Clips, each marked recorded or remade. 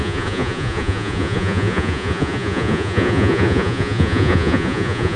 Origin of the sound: remade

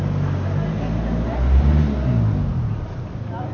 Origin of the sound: recorded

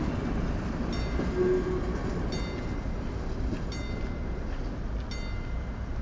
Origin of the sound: recorded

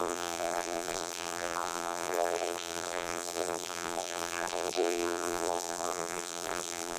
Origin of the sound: remade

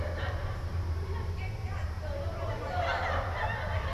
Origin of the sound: recorded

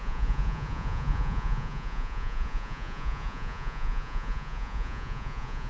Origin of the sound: remade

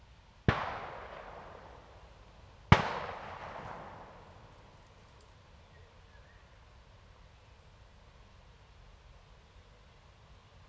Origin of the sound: recorded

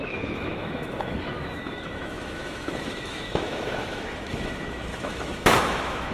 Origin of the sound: remade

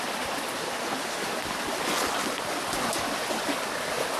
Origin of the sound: recorded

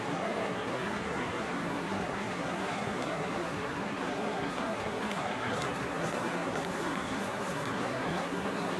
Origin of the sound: remade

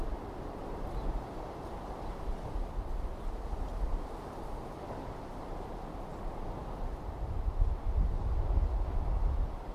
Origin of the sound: recorded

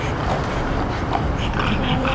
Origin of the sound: recorded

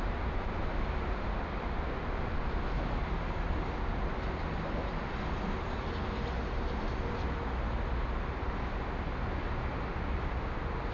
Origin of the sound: recorded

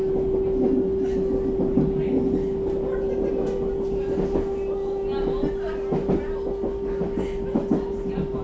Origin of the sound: recorded